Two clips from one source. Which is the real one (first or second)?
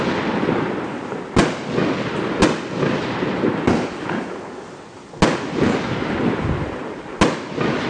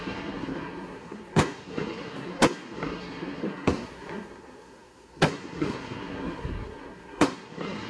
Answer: first